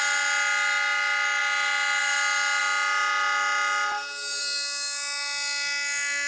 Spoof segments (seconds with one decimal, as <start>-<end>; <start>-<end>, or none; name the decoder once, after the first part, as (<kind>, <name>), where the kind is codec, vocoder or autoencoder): none